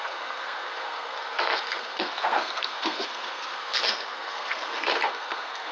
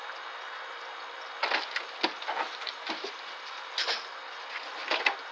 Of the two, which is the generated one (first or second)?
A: first